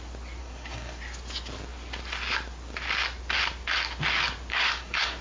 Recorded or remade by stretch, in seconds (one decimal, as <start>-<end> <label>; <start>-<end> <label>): 0.0-0.4 recorded; 0.4-1.0 remade; 1.0-4.5 recorded; 4.5-5.2 remade

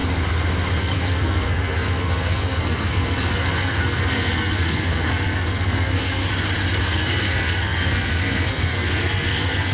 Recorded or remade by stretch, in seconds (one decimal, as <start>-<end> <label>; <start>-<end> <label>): 0.0-0.8 recorded; 0.8-6.2 remade; 6.2-6.8 recorded; 6.8-9.7 remade

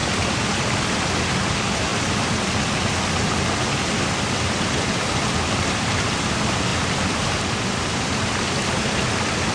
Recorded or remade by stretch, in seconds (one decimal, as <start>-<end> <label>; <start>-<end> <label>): 0.0-9.5 recorded

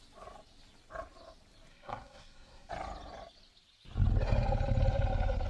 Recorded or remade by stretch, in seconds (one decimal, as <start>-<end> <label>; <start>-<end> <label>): 0.0-1.7 recorded; 1.7-2.7 remade; 2.7-5.5 recorded

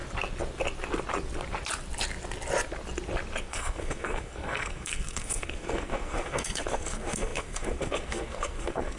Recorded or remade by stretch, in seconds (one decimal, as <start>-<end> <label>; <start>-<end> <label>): 0.0-3.4 recorded; 3.4-9.0 remade

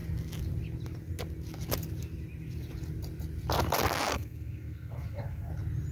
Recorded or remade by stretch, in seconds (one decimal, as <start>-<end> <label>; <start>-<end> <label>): 0.0-4.1 recorded; 4.1-5.5 remade; 5.5-5.9 recorded

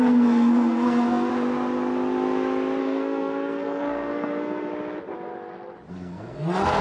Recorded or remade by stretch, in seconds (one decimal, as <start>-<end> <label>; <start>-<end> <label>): 0.0-1.3 remade; 1.3-2.8 recorded; 2.8-4.7 remade; 4.7-5.9 recorded; 5.9-6.8 remade